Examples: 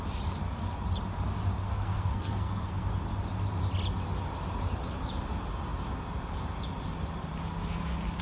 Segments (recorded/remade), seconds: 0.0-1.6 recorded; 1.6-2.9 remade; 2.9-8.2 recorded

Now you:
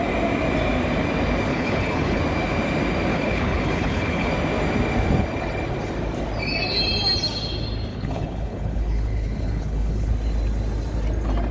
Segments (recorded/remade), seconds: 0.0-1.5 recorded; 1.5-2.2 remade; 2.2-3.1 recorded; 3.1-4.3 remade; 4.3-7.9 recorded; 7.9-10.1 remade; 10.1-11.5 recorded

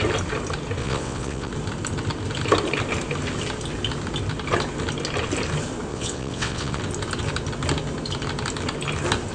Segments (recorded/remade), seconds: 0.0-0.8 recorded; 0.8-1.5 remade; 1.5-5.9 recorded; 5.9-6.8 remade; 6.8-9.3 recorded

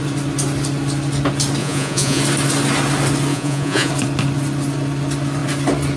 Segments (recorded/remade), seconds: 0.0-1.6 recorded; 1.6-2.2 remade; 2.2-3.3 recorded; 3.3-3.9 remade; 3.9-6.0 recorded

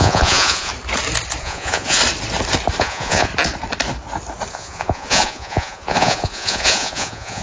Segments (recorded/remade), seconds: 0.0-0.7 remade; 0.7-1.4 recorded; 1.4-2.0 remade; 2.0-2.8 recorded; 2.8-3.3 remade; 3.3-4.5 recorded; 4.5-7.4 remade

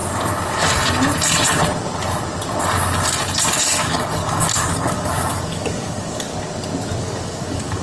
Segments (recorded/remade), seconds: 0.0-3.6 recorded; 3.6-6.3 remade; 6.3-7.0 recorded; 7.0-7.8 remade

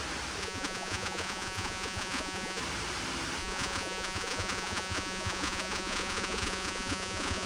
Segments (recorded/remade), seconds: 0.0-0.4 recorded; 0.4-2.6 remade; 2.6-3.4 recorded; 3.4-7.5 remade

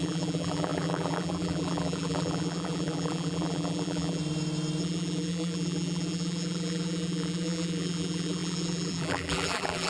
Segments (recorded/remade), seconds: 0.0-4.2 remade; 4.2-4.8 recorded; 4.8-9.9 remade